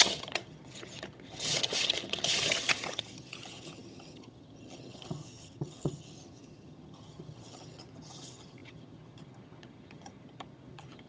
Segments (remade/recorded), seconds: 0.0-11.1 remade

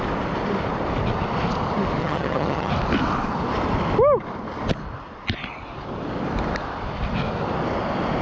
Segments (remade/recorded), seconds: 0.0-2.0 recorded; 2.0-2.7 remade; 2.7-8.2 recorded

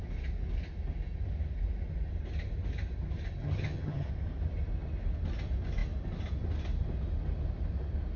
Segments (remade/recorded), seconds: 0.0-3.4 recorded; 3.4-4.1 remade; 4.1-8.2 recorded